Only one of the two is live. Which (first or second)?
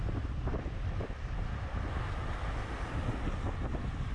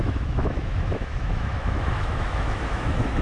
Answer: first